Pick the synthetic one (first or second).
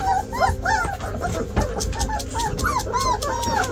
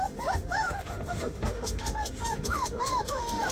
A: second